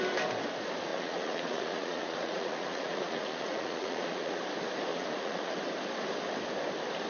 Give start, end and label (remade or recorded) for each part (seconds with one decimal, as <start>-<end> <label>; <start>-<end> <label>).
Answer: 0.0-0.9 recorded; 0.9-4.4 remade; 4.4-4.9 recorded; 4.9-5.5 remade; 5.5-7.1 recorded